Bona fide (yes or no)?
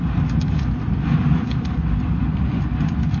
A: yes